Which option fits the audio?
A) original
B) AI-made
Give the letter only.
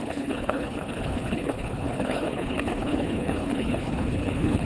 B